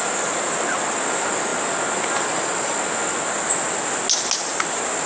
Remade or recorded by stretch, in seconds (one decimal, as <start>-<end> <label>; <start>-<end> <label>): 0.0-5.1 recorded